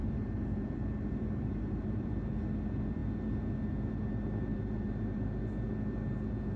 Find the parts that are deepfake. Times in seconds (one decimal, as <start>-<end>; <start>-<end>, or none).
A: 0.0-2.1; 4.5-5.4